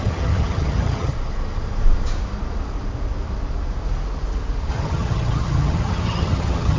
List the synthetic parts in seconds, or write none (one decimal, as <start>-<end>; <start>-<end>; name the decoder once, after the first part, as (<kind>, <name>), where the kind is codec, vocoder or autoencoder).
0.0-1.1 (vocoder, HiFi-GAN); 4.7-6.8

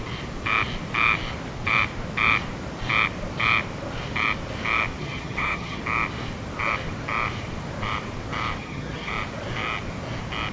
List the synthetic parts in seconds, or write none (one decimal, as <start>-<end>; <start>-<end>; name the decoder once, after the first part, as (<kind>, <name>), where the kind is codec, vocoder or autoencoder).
5.0-5.8 (vocoder, HiFi-GAN); 8.6-9.1

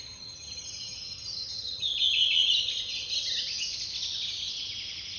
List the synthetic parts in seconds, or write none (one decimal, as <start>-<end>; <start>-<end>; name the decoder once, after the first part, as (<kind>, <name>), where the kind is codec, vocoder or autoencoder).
0.0-1.9 (vocoder, HiFi-GAN)

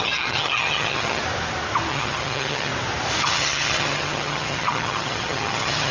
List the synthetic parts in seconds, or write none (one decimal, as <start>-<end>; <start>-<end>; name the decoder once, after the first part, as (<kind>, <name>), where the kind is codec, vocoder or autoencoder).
0.0-1.2 (vocoder, HiFi-GAN); 1.9-2.7; 3.2-5.9

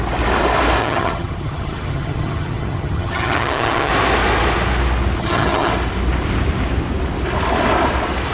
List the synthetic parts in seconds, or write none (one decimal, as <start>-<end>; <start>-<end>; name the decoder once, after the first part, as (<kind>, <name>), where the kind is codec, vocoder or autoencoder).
0.8-3.9 (vocoder, HiFi-GAN); 5.2-5.7